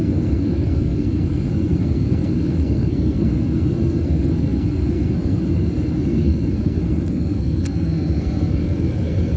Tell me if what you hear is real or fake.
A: fake